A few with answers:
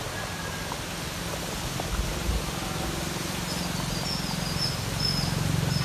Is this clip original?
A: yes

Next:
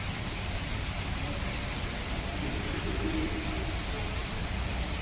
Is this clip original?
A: yes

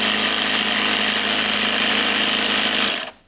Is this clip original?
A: yes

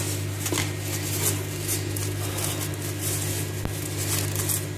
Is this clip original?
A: yes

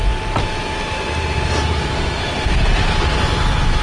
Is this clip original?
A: yes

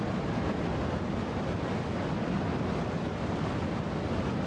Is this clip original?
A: yes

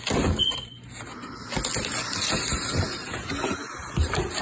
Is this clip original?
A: yes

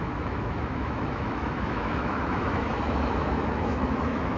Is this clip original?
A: no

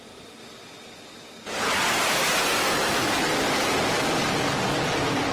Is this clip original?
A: yes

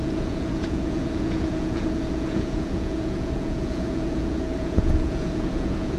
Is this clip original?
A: no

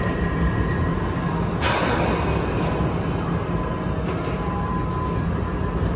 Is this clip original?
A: yes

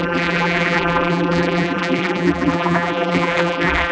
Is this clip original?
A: no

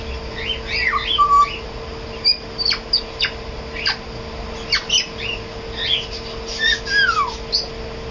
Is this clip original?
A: yes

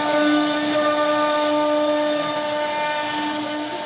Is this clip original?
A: yes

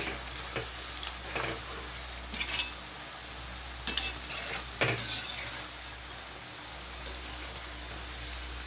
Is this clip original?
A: yes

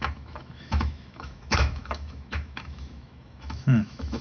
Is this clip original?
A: no